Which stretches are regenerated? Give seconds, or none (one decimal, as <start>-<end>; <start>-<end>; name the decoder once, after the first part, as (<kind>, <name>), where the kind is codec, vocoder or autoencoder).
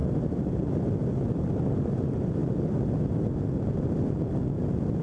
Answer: none